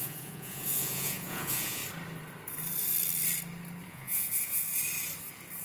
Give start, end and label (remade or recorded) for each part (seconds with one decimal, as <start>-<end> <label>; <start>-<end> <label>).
0.0-1.8 remade; 1.8-3.9 recorded; 3.9-4.7 remade; 4.7-5.6 recorded